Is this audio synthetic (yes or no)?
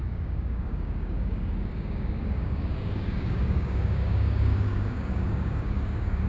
yes